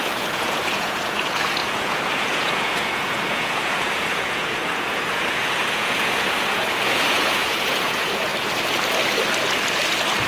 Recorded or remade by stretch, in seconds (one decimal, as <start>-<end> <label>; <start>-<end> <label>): 0.0-8.3 remade; 8.3-10.3 recorded